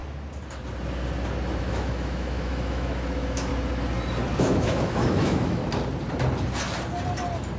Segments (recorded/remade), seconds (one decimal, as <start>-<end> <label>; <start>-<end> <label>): 0.0-1.6 recorded; 1.6-3.5 remade; 3.5-4.4 recorded; 4.4-5.6 remade; 5.6-7.6 recorded